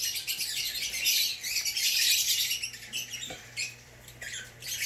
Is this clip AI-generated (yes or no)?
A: yes